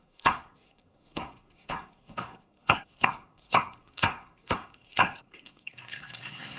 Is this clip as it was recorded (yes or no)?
no